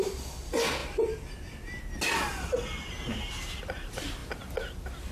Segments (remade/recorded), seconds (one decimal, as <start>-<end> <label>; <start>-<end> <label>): 0.0-5.1 recorded